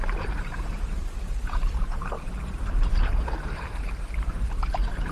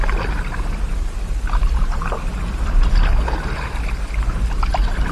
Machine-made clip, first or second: first